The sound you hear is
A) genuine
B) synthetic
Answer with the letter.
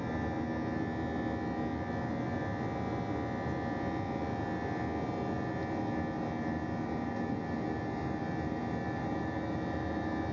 A